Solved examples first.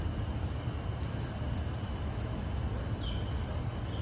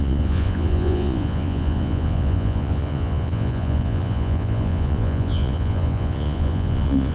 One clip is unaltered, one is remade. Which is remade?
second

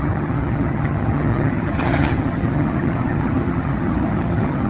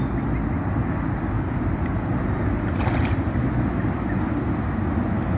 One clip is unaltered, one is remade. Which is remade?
first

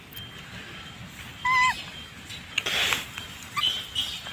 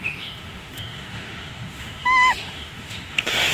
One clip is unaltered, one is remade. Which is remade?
second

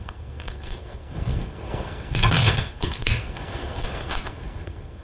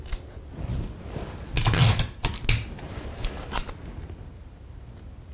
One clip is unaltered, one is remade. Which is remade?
first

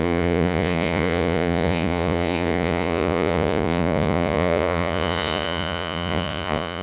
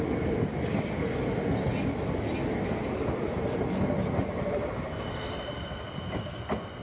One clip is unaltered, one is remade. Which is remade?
first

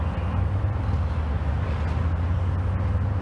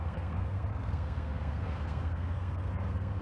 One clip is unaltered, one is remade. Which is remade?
second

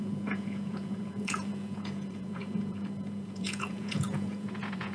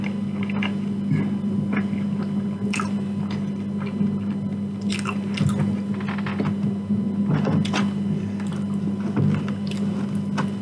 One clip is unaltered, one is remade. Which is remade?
first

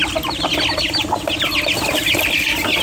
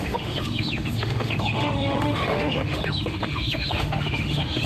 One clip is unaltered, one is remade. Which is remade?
second